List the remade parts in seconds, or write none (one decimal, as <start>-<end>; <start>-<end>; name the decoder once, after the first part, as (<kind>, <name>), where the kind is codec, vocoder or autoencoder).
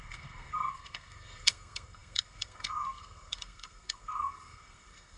0.0-5.2 (codec, SNAC)